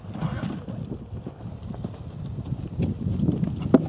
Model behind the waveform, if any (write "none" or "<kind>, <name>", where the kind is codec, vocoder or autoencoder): none